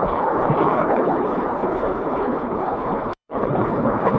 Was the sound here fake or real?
fake